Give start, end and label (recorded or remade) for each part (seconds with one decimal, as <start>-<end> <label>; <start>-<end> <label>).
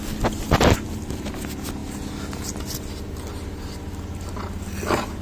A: 0.0-5.2 recorded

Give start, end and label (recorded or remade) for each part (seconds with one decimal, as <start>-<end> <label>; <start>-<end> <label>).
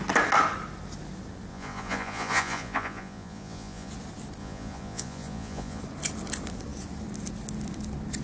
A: 0.0-1.5 recorded; 1.5-3.9 remade; 3.9-4.4 recorded; 4.4-5.8 remade; 5.8-8.2 recorded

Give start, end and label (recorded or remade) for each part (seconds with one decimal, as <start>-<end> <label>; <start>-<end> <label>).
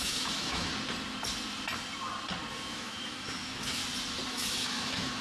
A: 0.0-0.7 remade; 0.7-2.7 recorded; 2.7-3.8 remade; 3.8-4.3 recorded; 4.3-5.2 remade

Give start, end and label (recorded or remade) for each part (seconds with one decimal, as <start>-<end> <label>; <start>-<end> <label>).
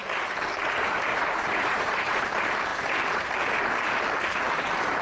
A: 0.0-1.1 recorded; 1.1-2.2 remade; 2.2-5.0 recorded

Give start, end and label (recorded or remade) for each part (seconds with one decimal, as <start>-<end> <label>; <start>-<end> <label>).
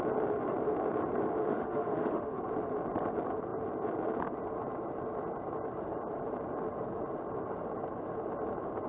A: 0.0-1.4 recorded; 1.4-2.4 remade; 2.4-8.9 recorded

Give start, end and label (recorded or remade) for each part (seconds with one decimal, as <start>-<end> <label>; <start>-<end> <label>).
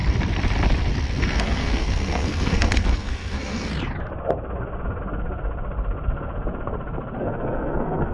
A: 0.0-1.2 recorded; 1.2-3.7 remade; 3.7-7.2 recorded; 7.2-8.1 remade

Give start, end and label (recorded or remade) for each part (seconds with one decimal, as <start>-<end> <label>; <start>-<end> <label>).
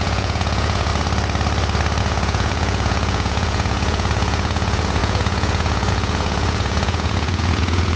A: 0.0-0.9 remade; 0.9-2.0 recorded; 2.0-8.0 remade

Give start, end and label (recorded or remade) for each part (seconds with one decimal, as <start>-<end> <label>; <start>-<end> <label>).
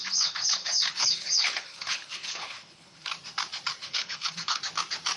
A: 0.0-3.1 remade; 3.1-3.8 recorded; 3.8-4.6 remade; 4.6-5.2 recorded